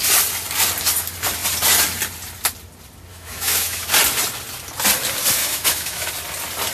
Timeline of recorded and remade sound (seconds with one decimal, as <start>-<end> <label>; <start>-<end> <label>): 0.0-3.1 recorded; 3.1-3.9 remade; 3.9-5.4 recorded; 5.4-6.1 remade; 6.1-6.7 recorded